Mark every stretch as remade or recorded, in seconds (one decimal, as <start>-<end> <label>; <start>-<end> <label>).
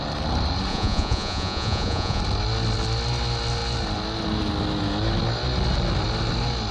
0.0-0.7 recorded; 0.7-2.2 remade; 2.2-6.7 recorded